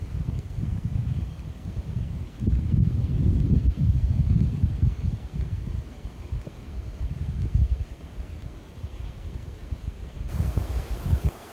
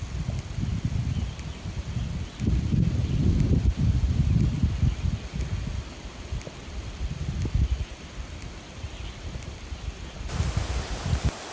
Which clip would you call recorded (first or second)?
second